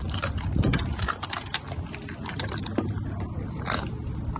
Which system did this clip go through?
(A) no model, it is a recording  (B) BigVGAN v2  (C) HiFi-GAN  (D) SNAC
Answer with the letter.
A